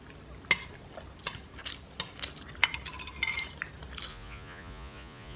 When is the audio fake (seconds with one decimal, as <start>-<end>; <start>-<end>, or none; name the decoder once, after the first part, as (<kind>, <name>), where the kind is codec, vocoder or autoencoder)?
4.1-5.4 (vocoder, Vocos)